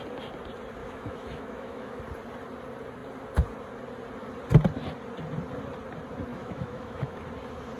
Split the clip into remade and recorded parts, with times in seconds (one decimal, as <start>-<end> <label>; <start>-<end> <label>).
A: 0.0-0.8 recorded; 0.8-2.0 remade; 2.0-6.3 recorded; 6.3-7.2 remade; 7.2-7.8 recorded